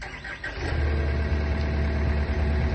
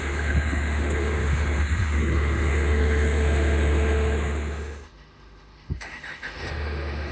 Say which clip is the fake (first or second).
second